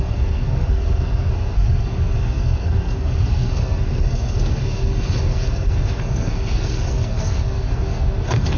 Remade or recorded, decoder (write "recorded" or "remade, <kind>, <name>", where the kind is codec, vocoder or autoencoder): remade, codec, SNAC